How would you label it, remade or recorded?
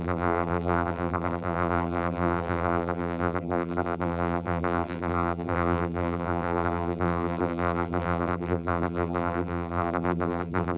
remade